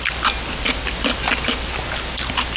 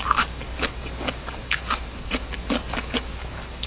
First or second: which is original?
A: first